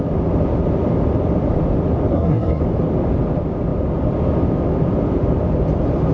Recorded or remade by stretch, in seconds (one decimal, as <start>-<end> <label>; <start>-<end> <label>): 0.0-2.1 recorded; 2.1-2.6 remade; 2.6-6.1 recorded